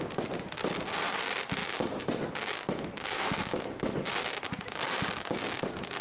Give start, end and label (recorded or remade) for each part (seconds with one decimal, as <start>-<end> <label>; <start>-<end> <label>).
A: 0.0-1.6 recorded; 1.6-4.1 remade; 4.1-6.0 recorded